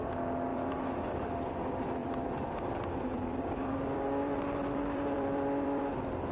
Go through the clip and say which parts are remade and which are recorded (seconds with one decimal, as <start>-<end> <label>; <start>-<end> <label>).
0.0-0.5 recorded; 0.5-1.5 remade; 1.5-2.0 recorded; 2.0-5.8 remade; 5.8-6.3 recorded